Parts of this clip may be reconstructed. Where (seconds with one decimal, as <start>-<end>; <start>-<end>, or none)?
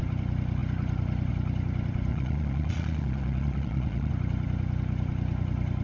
2.1-4.1